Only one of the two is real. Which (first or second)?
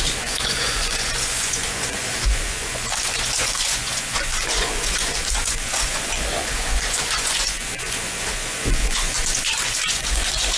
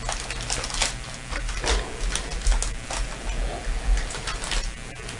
second